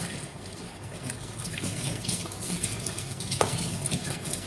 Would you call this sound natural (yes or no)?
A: no